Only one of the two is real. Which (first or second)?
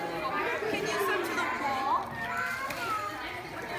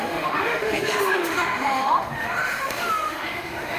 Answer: first